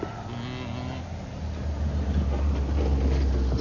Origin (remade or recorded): recorded